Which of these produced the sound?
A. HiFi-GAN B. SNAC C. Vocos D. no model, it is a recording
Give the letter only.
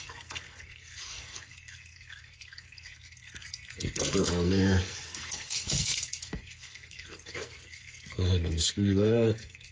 B